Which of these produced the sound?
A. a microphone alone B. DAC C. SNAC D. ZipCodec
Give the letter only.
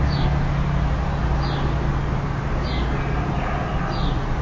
A